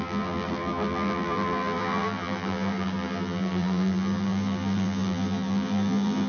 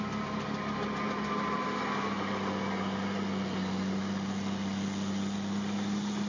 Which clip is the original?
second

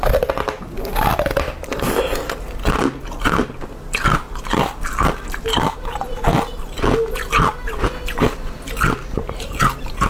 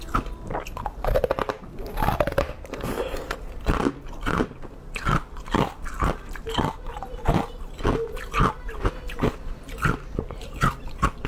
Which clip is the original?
first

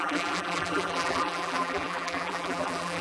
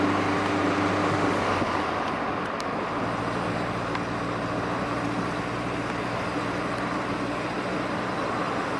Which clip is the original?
second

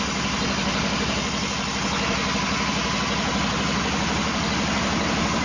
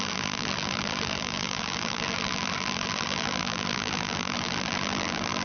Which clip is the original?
first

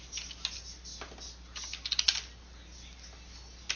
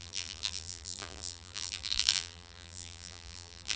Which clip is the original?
first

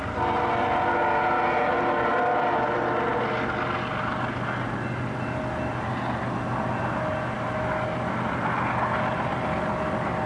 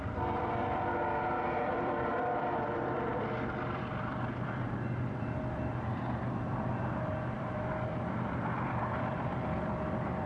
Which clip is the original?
first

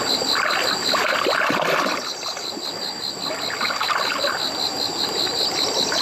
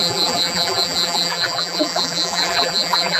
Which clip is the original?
first